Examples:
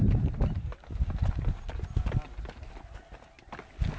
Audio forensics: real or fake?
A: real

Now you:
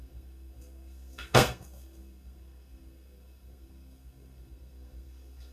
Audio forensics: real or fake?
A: fake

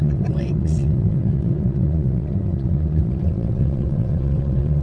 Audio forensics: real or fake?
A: fake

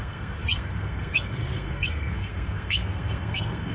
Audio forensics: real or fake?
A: fake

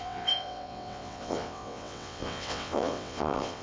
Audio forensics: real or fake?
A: fake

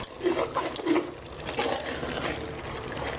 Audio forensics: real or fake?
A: real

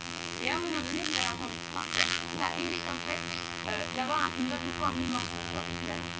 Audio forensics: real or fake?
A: fake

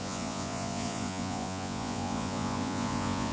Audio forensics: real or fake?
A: fake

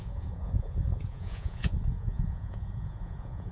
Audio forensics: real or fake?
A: fake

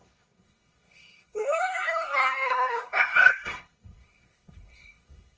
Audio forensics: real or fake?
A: fake